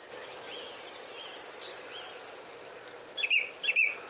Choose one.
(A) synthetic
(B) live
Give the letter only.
B